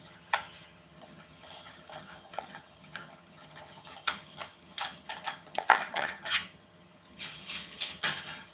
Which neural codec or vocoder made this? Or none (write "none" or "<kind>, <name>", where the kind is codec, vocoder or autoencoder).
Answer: vocoder, HiFi-GAN